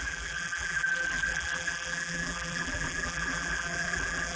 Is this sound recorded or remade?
remade